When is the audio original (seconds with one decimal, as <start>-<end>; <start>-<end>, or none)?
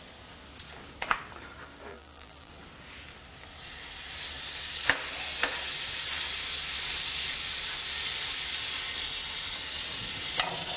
0.0-1.9; 2.5-10.8